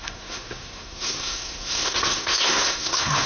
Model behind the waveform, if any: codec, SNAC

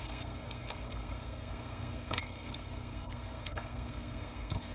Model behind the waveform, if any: codec, SNAC